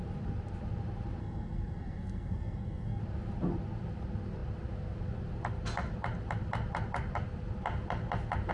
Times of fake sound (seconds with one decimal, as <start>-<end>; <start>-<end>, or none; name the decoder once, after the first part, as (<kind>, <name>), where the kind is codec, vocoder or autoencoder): 1.2-3.0 (codec, SNAC)